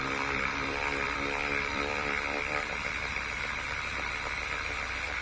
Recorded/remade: remade